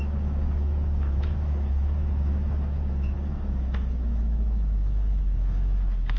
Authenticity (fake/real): fake